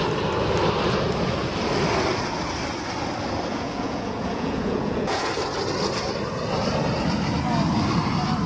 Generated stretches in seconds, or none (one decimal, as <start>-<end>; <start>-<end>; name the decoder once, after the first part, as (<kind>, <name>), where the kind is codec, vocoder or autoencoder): 3.5-5.3 (vocoder, Vocos)